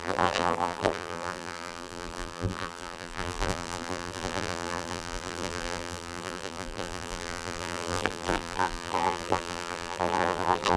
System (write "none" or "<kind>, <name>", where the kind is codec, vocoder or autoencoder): vocoder, BigVGAN v2